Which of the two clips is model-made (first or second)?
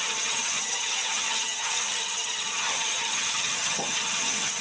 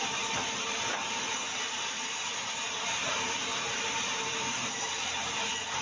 first